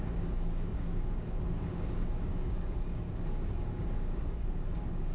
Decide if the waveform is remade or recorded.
remade